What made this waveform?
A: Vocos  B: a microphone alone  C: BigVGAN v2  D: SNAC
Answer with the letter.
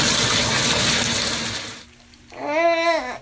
B